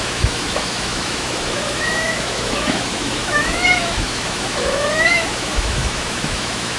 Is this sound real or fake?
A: fake